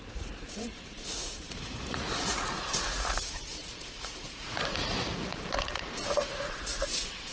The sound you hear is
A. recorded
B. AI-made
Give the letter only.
B